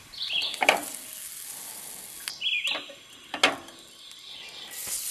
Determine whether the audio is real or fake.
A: real